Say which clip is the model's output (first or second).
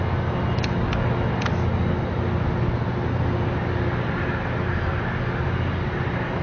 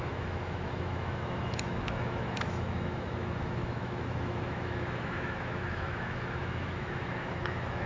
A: second